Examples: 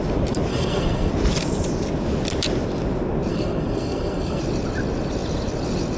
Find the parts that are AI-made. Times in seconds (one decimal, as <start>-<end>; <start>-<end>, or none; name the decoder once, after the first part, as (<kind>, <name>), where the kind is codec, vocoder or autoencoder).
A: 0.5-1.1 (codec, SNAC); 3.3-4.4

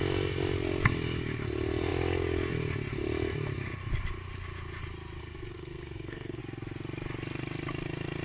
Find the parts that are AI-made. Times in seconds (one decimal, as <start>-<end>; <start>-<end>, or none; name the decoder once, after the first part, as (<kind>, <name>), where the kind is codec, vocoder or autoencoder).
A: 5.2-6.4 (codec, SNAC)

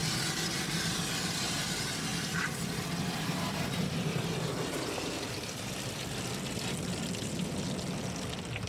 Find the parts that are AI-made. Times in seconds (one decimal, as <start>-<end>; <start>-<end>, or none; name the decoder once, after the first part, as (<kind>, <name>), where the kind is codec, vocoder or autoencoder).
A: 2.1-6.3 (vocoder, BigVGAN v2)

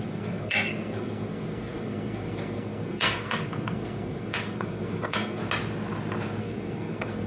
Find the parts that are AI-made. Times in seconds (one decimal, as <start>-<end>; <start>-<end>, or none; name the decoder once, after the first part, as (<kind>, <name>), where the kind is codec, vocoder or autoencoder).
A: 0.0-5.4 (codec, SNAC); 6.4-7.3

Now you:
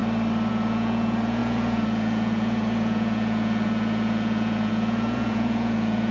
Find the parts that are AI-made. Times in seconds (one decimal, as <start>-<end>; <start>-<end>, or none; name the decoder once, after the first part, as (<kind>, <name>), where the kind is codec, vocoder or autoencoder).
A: 0.5-6.1 (vocoder, Vocos)

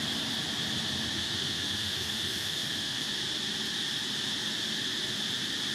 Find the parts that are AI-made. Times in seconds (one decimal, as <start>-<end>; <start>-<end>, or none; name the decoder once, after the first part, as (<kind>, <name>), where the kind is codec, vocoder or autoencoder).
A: 1.1-3.1 (autoencoder, DAC-VAE)

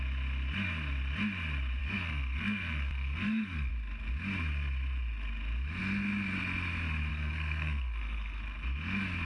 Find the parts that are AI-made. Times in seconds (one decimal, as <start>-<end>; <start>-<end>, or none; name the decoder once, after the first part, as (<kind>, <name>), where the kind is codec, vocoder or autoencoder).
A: 1.8-3.7 (codec, SNAC); 7.1-8.4

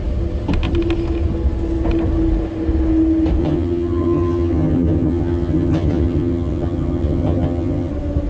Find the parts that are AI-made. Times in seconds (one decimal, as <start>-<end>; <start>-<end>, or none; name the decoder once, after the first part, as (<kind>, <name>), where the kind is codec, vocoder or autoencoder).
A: 3.4-7.9 (vocoder, HiFi-GAN)